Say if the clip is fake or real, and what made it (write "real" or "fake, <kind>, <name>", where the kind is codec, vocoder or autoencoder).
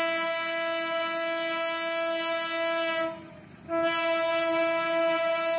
real